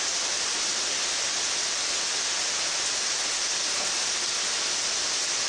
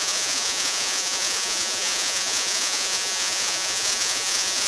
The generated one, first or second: second